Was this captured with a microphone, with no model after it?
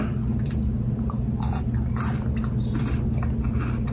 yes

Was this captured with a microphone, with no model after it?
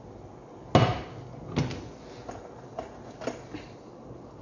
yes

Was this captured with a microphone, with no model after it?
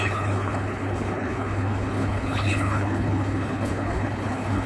no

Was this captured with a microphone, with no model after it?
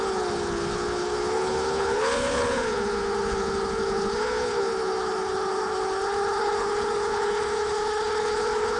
no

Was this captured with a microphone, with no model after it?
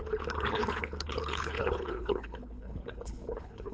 no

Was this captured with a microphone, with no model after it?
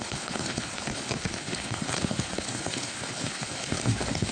no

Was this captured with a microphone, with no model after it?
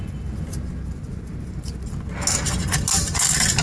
yes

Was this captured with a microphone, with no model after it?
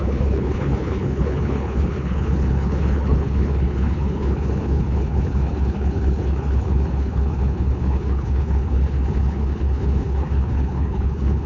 no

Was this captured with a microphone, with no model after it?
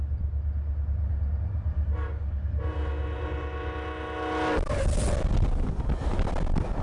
yes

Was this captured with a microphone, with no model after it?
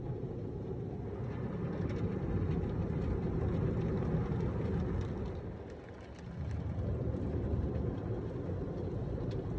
yes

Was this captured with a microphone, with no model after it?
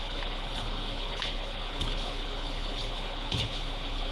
no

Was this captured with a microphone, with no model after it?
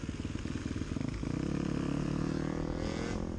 yes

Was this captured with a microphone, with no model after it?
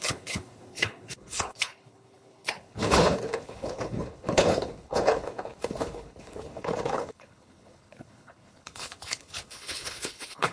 no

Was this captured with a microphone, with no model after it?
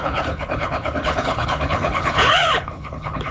no